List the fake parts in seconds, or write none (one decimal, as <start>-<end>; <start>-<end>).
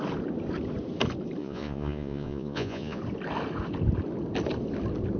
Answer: 1.4-3.0